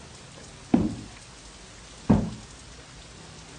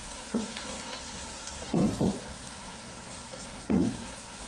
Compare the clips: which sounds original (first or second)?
first